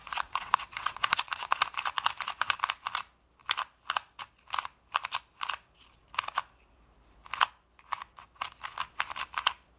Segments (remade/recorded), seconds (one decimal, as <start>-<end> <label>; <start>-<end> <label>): 0.0-1.5 remade; 1.5-9.8 recorded